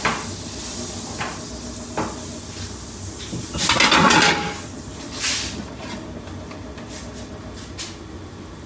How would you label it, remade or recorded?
recorded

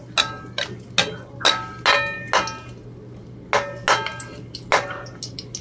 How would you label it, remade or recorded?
recorded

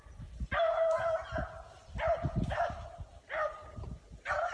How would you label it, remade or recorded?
recorded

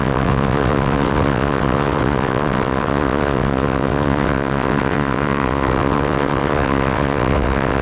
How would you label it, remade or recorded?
remade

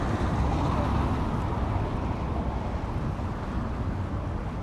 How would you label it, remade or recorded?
recorded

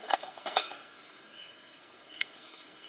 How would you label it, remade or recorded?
remade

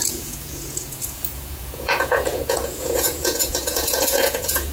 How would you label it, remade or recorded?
remade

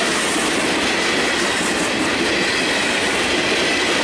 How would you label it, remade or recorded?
recorded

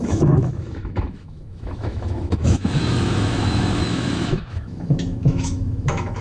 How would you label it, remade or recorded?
remade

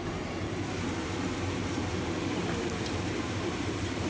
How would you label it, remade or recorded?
remade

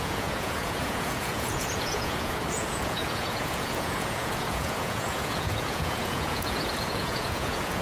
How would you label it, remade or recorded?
remade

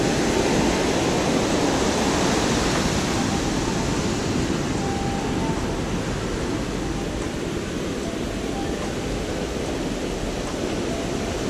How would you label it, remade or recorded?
recorded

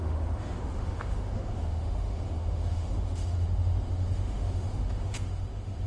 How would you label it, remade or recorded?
remade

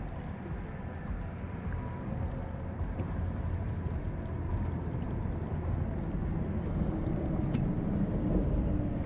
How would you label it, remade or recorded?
recorded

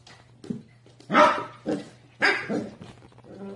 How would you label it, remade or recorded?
recorded